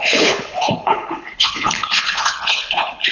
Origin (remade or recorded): remade